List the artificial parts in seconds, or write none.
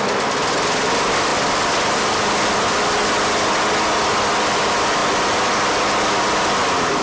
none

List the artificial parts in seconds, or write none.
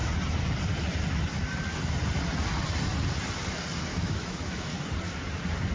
3.9-4.7 (autoencoder, DAC-VAE)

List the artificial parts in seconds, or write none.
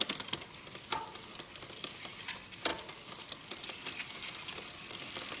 none